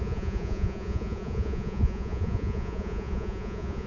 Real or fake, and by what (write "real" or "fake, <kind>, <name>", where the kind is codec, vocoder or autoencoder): fake, vocoder, Vocos